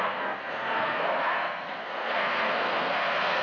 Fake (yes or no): yes